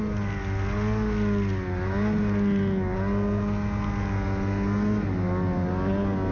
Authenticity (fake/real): real